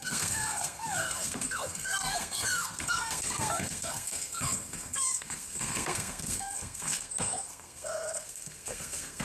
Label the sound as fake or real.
fake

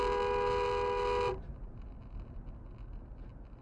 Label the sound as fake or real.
real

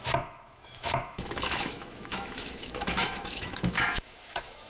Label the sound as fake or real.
fake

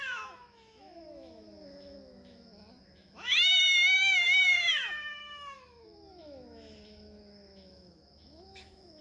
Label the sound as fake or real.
fake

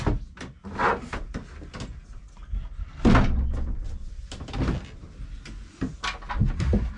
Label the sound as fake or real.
real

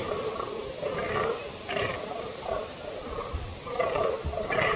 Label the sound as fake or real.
real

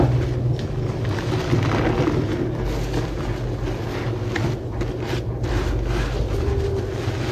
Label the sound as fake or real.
real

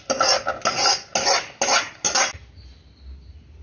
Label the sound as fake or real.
real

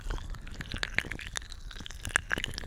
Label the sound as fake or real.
real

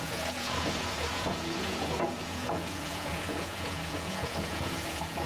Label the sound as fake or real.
fake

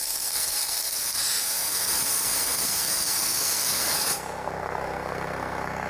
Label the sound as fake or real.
fake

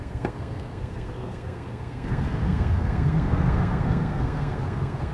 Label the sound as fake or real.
fake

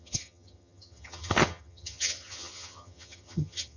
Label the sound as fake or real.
fake